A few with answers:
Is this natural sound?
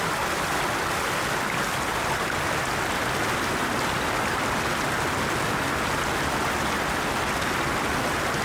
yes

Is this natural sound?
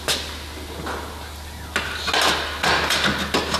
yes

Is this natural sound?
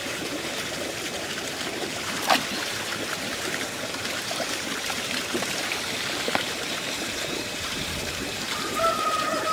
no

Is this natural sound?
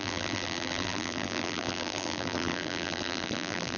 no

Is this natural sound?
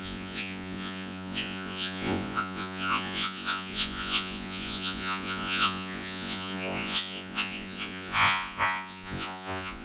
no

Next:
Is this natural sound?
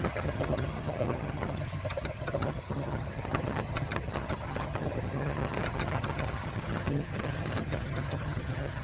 no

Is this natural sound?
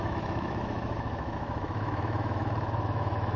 no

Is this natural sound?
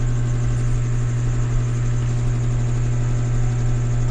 yes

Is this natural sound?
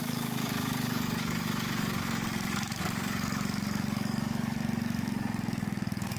no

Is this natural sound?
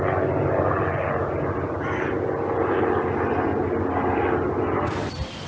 yes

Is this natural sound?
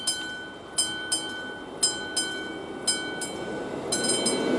yes